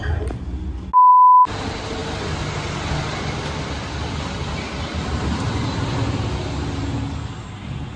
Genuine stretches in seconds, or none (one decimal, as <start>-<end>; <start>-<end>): 0.0-8.0